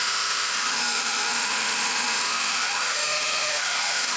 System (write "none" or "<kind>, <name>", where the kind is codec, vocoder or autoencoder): autoencoder, DAC-VAE